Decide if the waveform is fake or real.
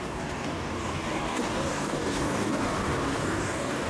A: fake